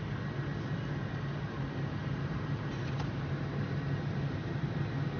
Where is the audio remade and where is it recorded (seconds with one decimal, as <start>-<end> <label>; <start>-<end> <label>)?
0.0-2.0 recorded; 2.0-3.7 remade; 3.7-5.2 recorded